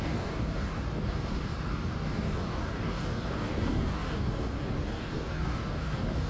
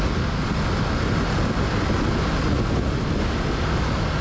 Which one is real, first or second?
second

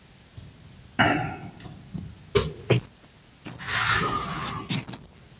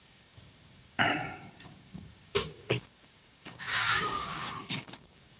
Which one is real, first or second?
first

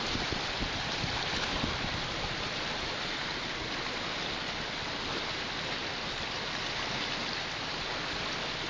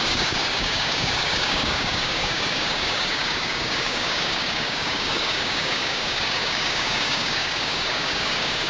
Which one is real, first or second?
first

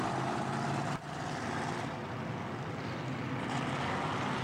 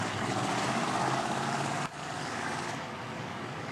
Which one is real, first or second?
first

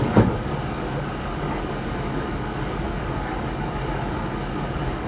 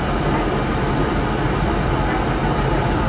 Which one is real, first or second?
second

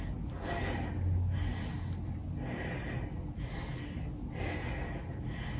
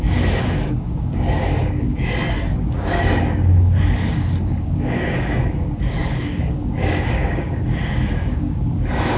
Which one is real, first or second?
first